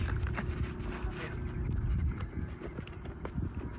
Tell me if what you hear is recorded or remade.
recorded